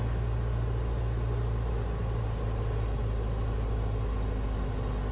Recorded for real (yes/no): yes